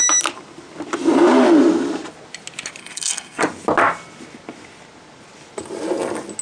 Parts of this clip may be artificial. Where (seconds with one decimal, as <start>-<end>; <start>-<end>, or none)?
2.8-3.4